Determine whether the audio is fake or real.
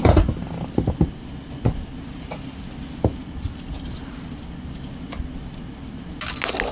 real